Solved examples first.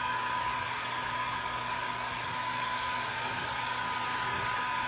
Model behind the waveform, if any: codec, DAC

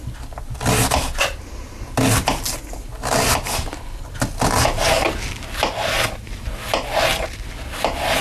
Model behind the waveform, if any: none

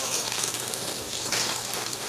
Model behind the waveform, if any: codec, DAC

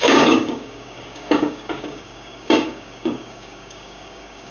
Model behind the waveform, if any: codec, DAC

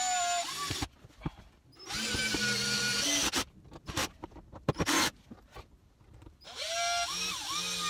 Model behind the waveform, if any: none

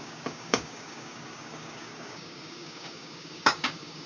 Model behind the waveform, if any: codec, DAC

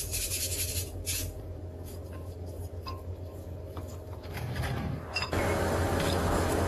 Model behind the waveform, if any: codec, DAC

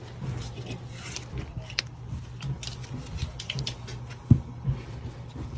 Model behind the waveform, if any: none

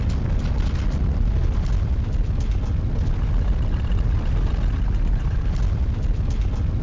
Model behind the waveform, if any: none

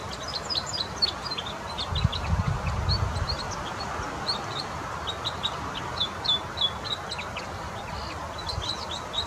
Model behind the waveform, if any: none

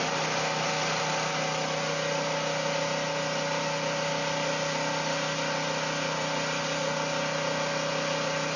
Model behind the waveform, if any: none